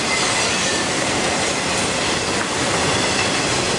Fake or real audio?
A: real